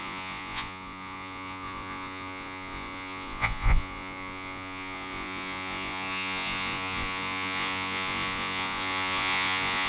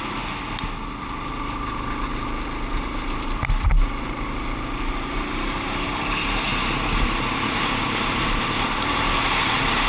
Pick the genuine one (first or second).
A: second